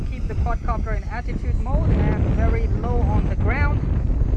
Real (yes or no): yes